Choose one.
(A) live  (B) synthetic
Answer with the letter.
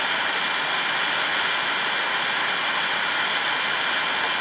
A